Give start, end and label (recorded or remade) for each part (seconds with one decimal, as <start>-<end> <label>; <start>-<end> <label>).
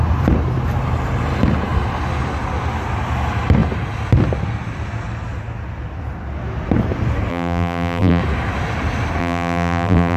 0.0-7.3 recorded; 7.3-8.2 remade; 8.2-9.2 recorded; 9.2-10.2 remade